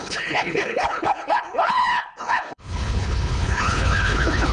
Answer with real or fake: fake